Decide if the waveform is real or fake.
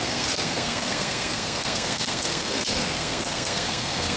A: fake